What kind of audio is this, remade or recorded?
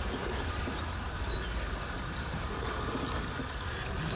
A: recorded